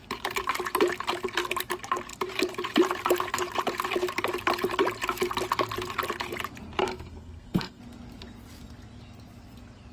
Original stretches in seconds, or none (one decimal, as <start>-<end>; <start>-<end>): 0.0-6.8; 7.8-9.9